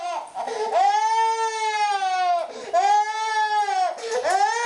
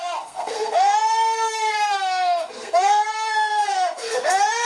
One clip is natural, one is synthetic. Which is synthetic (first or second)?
second